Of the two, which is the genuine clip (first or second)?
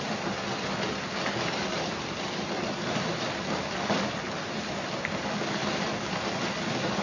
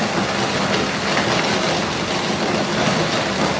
second